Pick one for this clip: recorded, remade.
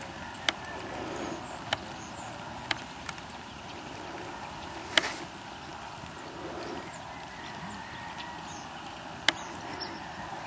recorded